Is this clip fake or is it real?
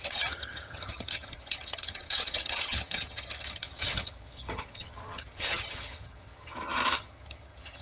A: fake